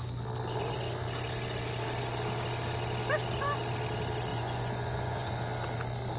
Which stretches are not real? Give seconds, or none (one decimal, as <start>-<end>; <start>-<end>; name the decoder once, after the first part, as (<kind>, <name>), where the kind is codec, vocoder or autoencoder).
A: 4.3-5.3 (vocoder, Vocos)